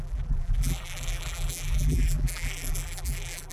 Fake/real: fake